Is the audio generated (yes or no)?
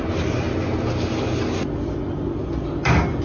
no